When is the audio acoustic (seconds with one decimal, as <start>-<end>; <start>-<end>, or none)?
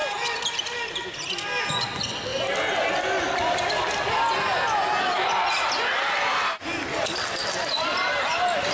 0.0-8.7